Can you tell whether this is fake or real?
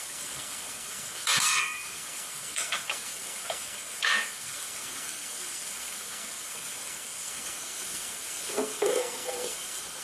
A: fake